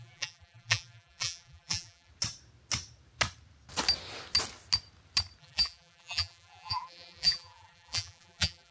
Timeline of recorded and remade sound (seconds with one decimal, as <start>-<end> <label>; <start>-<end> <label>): 0.0-2.1 remade; 2.1-5.4 recorded; 5.4-8.7 remade